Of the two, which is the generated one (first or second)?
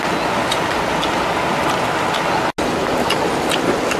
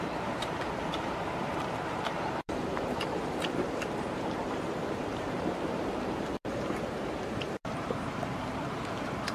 second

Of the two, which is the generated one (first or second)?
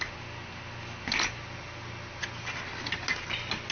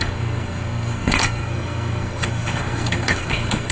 second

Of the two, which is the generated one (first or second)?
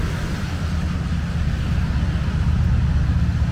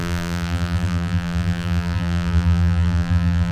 second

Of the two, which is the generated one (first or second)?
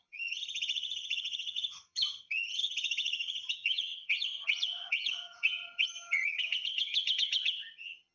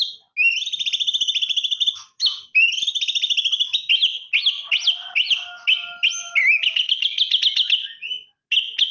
first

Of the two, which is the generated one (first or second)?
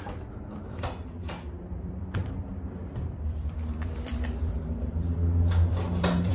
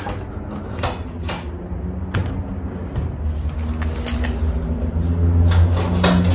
first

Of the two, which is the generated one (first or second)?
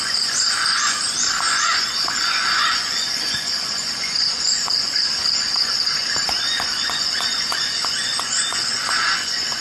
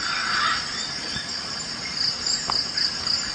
first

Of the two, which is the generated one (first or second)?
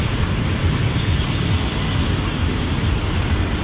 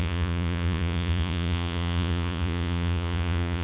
second